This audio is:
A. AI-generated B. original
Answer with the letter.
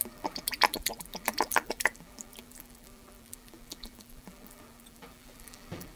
A